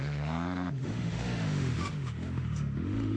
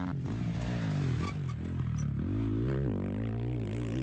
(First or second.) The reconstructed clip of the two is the first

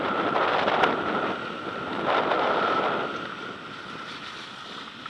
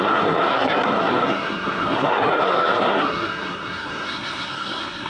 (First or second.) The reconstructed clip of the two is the second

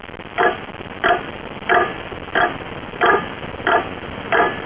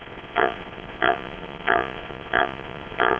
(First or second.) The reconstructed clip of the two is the second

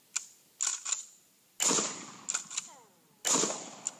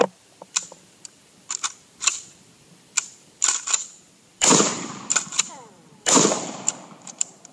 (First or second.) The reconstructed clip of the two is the second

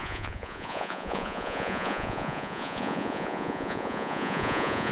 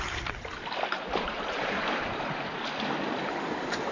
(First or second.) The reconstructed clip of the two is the first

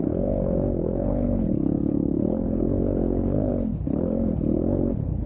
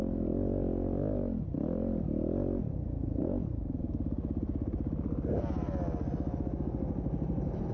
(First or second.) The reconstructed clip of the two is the first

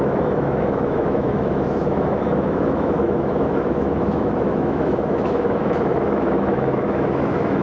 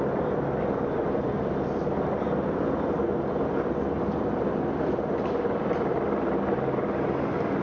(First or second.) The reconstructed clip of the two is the first